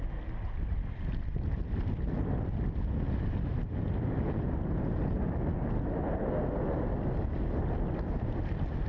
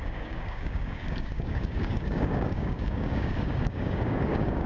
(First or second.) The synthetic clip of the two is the second